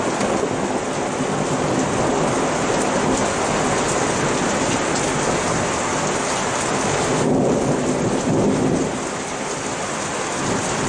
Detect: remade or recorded recorded